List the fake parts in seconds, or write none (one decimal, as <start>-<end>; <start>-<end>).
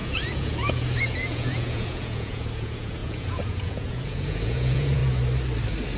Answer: 0.0-5.0